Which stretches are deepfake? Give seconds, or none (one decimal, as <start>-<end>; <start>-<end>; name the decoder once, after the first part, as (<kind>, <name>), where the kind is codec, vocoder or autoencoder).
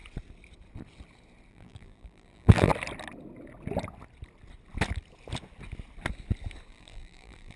1.5-2.7 (vocoder, BigVGAN v2); 6.7-7.6